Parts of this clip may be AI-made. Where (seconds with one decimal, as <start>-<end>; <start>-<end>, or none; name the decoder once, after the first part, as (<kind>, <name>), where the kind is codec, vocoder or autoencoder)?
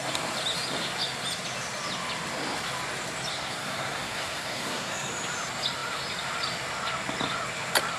3.3-5.1 (codec, SNAC)